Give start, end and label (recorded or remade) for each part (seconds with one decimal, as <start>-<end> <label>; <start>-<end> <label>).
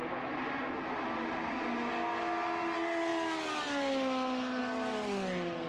0.0-5.7 recorded